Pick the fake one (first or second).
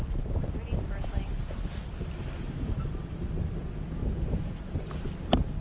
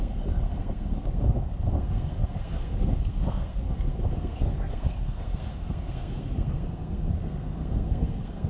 second